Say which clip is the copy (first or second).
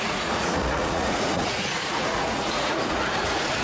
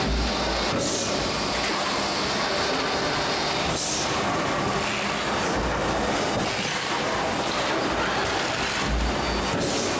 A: first